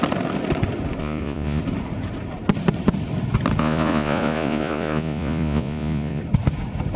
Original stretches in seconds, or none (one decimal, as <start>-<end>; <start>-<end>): 0.0-1.0; 1.6-3.6; 6.2-7.0